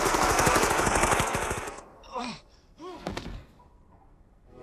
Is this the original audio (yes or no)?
no